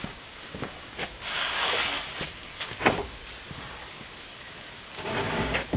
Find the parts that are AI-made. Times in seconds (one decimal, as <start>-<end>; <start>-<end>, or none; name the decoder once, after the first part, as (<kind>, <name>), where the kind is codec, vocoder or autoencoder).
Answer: 0.0-1.8 (codec, DAC); 2.3-3.2; 3.9-5.8